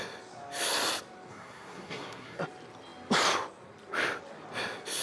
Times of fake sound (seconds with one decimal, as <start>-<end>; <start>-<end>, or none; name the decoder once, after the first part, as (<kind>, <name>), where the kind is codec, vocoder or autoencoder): 1.3-2.4 (codec, SNAC)